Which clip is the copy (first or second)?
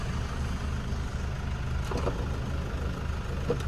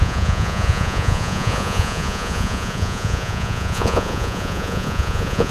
second